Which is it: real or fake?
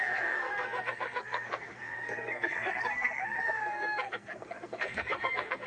fake